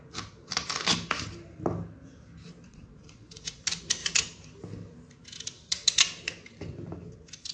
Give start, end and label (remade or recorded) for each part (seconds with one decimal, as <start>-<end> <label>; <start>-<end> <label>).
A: 0.0-2.7 recorded; 2.7-3.6 remade; 3.6-7.5 recorded